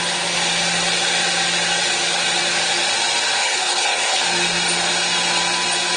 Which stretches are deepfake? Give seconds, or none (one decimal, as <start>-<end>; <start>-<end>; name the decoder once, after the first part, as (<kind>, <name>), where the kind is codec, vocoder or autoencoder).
3.4-4.2 (codec, HILCodec)